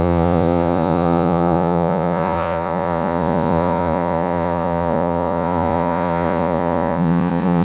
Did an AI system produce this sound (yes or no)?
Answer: yes